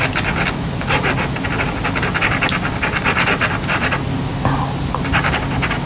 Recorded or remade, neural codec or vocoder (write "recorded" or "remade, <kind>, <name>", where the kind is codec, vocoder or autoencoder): recorded